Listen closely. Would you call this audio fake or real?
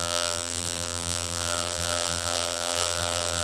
fake